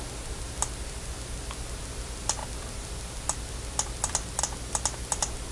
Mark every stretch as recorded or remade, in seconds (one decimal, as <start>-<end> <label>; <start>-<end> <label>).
0.0-5.5 recorded